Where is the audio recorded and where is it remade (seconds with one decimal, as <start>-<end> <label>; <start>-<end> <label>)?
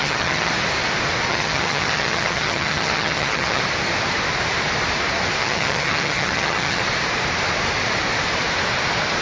0.0-0.5 remade; 0.5-1.3 recorded; 1.3-3.6 remade; 3.6-5.4 recorded; 5.4-6.8 remade; 6.8-9.2 recorded